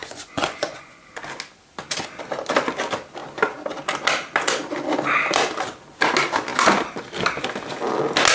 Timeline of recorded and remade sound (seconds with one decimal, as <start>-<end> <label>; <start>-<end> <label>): 0.0-1.2 remade; 1.2-8.3 recorded